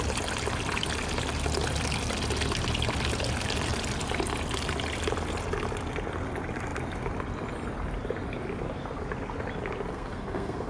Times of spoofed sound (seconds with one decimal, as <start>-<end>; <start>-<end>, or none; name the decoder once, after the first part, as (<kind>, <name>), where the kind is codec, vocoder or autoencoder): 9.9-10.7 (codec, SNAC)